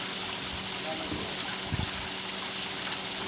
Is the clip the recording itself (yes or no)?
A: yes